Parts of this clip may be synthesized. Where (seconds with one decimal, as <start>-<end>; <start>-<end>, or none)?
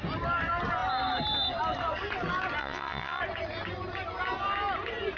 2.6-3.2